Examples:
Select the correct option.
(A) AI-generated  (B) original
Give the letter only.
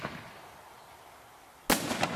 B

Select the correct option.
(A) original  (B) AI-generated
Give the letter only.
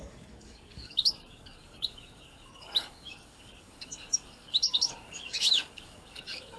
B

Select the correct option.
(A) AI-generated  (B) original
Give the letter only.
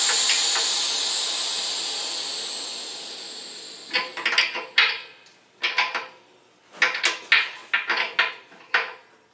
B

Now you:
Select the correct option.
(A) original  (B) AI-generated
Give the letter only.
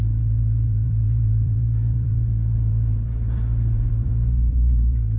B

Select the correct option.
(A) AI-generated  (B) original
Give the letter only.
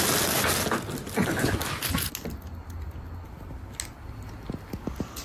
B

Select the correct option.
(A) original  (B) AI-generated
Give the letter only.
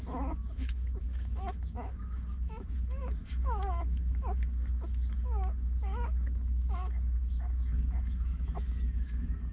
B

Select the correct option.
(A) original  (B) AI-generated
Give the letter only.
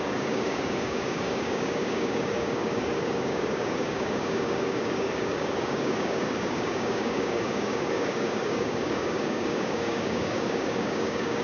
B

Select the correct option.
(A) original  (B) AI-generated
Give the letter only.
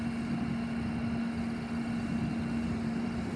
A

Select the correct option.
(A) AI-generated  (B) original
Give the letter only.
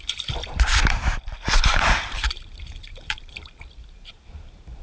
A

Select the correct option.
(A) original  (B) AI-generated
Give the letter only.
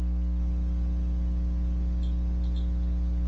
A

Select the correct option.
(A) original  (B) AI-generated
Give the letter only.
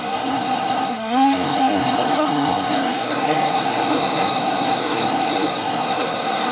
B